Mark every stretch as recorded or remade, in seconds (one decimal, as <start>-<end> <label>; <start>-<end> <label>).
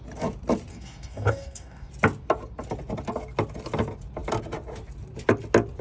0.0-0.7 recorded; 0.7-1.9 remade; 1.9-5.8 recorded